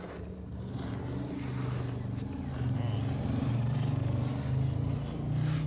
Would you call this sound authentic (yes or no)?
yes